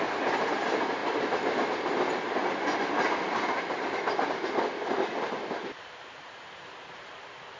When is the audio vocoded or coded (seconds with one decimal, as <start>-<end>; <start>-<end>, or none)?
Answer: 0.0-1.0; 5.6-7.6